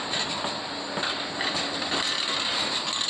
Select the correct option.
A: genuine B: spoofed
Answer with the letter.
A